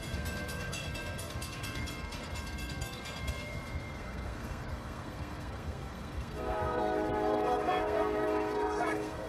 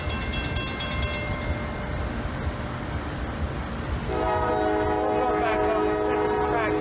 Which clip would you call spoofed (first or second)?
first